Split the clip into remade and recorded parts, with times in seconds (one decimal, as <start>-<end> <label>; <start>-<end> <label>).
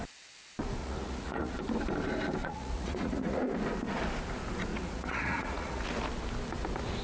0.0-0.8 recorded; 0.8-1.6 remade; 1.6-2.4 recorded; 2.4-3.4 remade; 3.4-4.7 recorded; 4.7-5.9 remade; 5.9-7.0 recorded